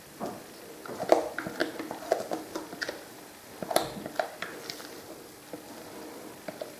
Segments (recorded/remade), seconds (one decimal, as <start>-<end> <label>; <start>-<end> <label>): 0.0-6.8 recorded